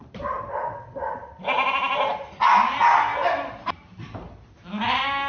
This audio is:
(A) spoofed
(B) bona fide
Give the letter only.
B